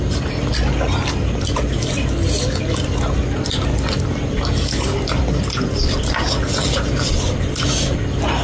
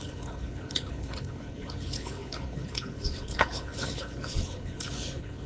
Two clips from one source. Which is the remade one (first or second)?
second